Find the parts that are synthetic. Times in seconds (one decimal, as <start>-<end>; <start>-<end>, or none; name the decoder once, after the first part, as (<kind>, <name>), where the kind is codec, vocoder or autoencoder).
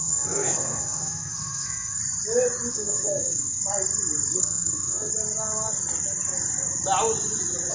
0.0-2.0 (codec, SNAC); 2.7-3.6; 4.4-5.1